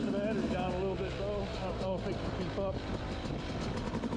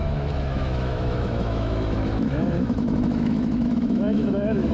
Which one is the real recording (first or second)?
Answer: first